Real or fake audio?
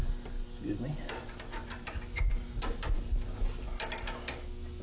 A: real